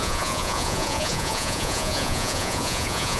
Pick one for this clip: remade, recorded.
remade